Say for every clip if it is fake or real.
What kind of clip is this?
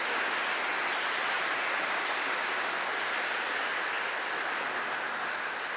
real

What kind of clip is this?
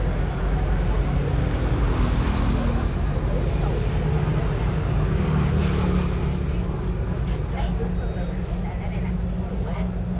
real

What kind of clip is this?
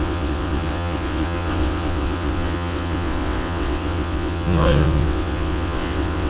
fake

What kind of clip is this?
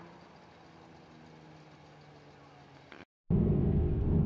real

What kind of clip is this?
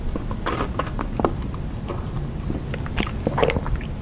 real